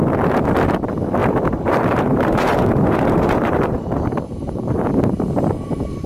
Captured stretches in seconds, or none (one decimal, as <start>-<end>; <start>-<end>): 0.0-1.2; 4.9-6.1